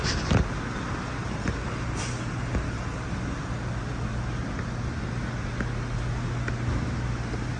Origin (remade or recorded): recorded